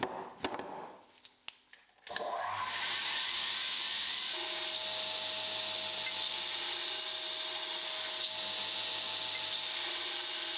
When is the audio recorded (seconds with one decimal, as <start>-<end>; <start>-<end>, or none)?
0.0-10.6